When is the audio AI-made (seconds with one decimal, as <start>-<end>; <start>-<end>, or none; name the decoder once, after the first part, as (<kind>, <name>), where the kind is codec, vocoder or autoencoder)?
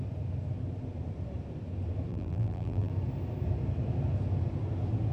2.1-2.9 (vocoder, BigVGAN v2)